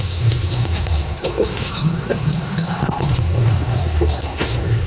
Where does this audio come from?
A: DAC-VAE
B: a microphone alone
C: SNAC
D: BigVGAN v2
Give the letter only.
C